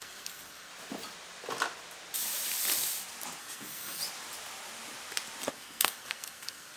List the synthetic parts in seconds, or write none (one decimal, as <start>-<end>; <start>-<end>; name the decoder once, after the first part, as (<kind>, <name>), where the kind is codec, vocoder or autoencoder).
0.0-0.7 (codec, SNAC); 3.4-4.0; 5.5-6.8